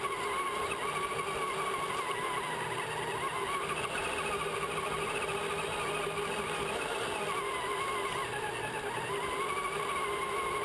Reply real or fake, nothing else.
real